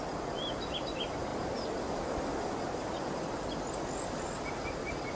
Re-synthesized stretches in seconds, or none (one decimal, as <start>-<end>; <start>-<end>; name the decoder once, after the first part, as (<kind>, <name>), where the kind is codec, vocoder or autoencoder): none